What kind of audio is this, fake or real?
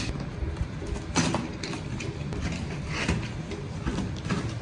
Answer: real